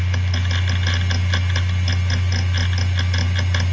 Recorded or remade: recorded